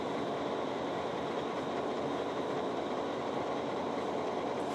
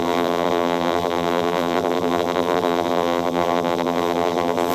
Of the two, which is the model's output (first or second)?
second